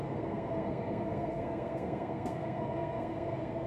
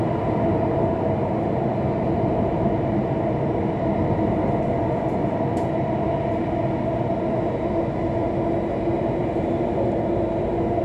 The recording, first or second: second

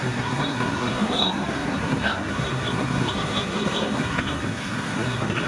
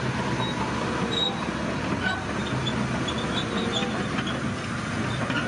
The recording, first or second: second